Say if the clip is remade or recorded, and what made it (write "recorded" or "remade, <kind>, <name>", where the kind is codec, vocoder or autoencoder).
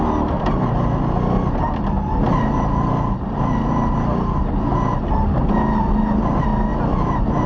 recorded